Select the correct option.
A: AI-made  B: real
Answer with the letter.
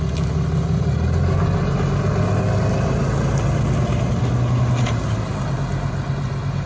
B